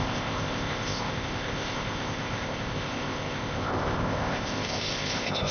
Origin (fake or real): fake